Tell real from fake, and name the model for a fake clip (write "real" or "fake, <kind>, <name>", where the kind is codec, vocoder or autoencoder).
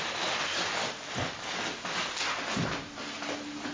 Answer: real